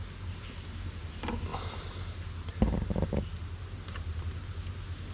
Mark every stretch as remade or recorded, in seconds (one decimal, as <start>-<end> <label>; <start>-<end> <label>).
0.0-5.1 recorded